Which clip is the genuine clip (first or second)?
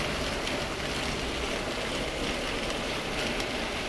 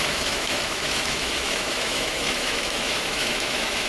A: first